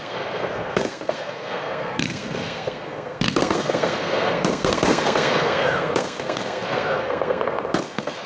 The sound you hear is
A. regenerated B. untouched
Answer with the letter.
A